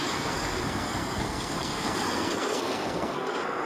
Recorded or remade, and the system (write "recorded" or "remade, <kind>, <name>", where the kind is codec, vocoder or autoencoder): remade, codec, SNAC